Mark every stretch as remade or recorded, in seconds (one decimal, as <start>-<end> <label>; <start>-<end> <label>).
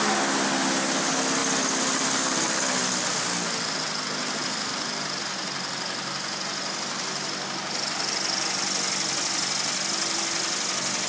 0.0-11.1 recorded